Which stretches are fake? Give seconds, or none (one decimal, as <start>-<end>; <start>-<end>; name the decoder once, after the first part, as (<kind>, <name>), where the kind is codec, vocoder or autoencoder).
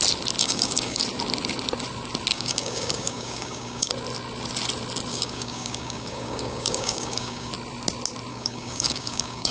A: 0.4-1.0 (codec, DAC); 2.3-3.9; 5.1-7.5; 8.3-9.5